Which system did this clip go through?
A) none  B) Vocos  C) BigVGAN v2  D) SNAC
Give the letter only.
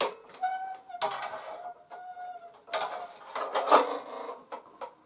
A